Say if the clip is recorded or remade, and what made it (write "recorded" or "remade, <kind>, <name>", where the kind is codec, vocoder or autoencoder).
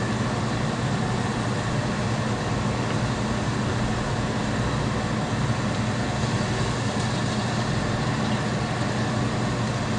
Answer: recorded